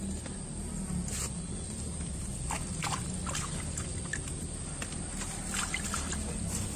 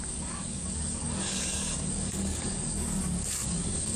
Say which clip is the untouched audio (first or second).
first